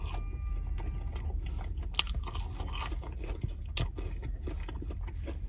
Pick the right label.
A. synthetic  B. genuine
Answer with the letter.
B